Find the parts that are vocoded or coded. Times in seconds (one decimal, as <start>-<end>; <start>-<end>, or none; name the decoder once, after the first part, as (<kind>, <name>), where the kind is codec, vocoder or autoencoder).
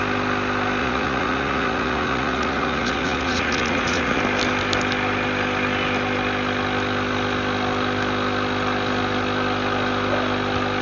0.8-4.2 (vocoder, Vocos)